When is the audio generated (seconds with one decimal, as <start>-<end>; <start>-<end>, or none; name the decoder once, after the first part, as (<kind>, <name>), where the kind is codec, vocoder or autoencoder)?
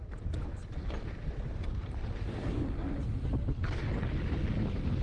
0.6-2.3 (vocoder, BigVGAN v2)